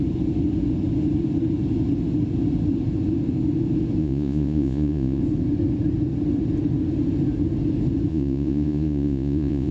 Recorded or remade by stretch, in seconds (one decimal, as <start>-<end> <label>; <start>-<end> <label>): 0.0-4.0 recorded; 4.0-5.2 remade; 5.2-8.1 recorded; 8.1-9.7 remade